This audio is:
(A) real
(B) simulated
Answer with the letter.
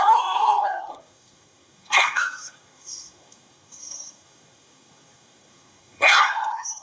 B